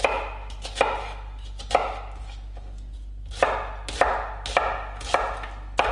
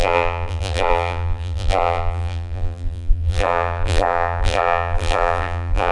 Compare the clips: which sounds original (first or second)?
first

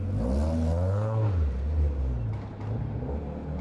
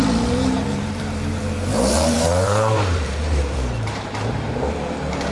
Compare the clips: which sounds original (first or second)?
first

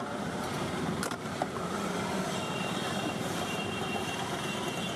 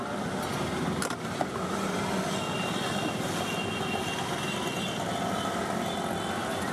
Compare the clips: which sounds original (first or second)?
second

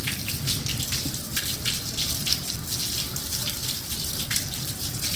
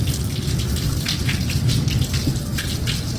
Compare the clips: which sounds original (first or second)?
second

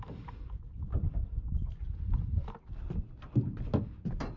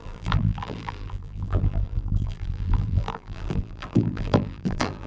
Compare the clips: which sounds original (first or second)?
first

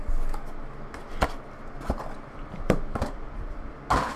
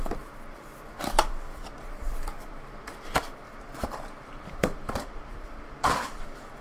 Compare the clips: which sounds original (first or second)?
first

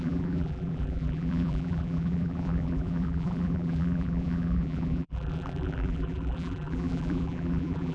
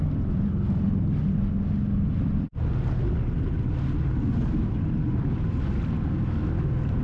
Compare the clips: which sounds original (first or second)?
second